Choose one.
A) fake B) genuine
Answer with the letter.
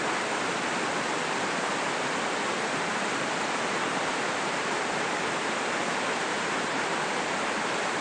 A